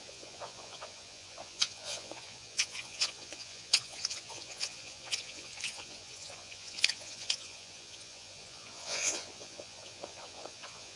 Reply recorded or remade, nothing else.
remade